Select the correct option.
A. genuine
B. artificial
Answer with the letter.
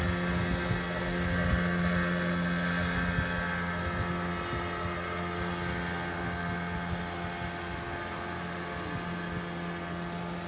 A